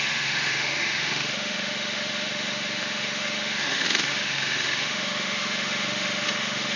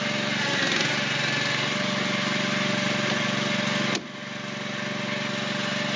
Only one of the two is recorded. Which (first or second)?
second